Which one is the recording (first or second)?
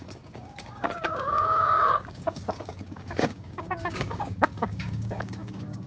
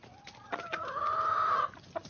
second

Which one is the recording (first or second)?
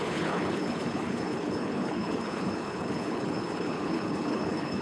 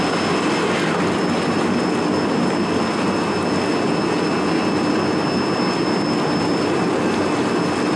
second